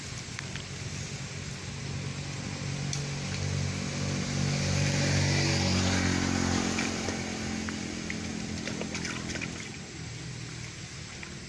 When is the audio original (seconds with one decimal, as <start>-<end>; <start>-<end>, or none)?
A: 0.0-8.3; 10.3-11.5